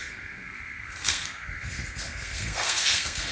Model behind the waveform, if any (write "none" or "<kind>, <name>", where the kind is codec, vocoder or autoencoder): codec, SNAC